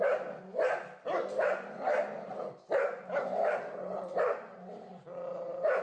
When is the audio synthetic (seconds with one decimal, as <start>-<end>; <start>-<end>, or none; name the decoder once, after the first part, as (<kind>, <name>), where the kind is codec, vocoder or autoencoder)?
none